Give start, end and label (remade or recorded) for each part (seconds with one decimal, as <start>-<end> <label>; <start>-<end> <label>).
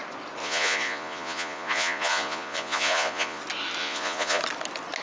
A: 0.0-0.4 recorded; 0.4-3.4 remade; 3.4-3.8 recorded; 3.8-4.4 remade; 4.4-5.0 recorded